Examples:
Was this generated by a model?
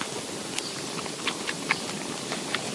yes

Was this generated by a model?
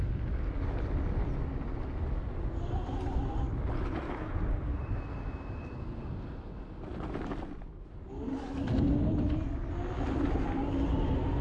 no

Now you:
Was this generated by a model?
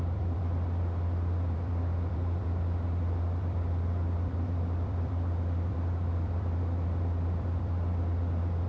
yes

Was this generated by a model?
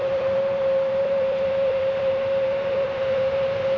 yes